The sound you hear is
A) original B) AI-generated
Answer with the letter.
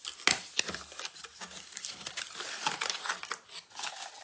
A